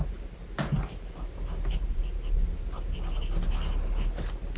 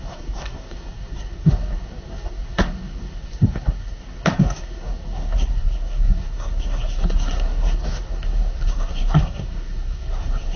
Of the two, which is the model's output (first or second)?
second